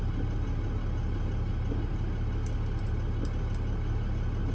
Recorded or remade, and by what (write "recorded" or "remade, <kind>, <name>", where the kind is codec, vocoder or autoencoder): recorded